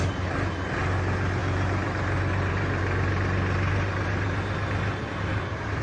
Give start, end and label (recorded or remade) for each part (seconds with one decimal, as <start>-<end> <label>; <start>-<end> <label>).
0.0-5.8 recorded